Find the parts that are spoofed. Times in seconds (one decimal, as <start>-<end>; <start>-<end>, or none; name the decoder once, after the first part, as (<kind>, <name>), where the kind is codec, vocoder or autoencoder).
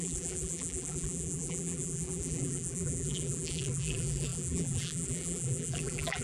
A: 0.0-6.2 (vocoder, BigVGAN v2)